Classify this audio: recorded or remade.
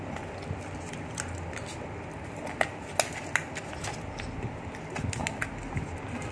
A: recorded